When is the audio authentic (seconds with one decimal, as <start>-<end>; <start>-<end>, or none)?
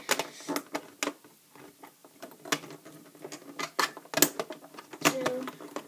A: 0.0-5.9